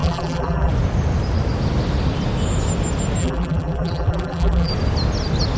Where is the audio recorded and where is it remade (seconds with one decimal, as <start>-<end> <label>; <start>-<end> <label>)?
0.0-0.7 remade; 0.7-3.2 recorded; 3.2-4.7 remade; 4.7-5.6 recorded